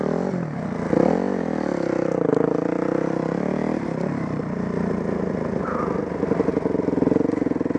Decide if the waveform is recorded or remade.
recorded